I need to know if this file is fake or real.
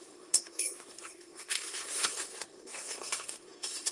fake